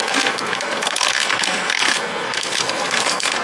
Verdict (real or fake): fake